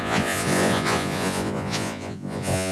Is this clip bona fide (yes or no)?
no